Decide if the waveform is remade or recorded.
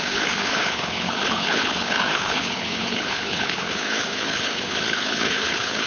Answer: remade